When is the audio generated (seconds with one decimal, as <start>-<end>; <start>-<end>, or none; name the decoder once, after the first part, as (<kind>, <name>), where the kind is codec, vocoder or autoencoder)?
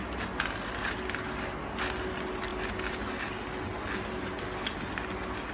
none